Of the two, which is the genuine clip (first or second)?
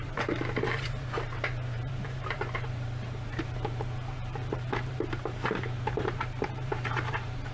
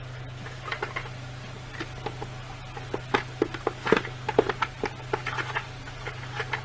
second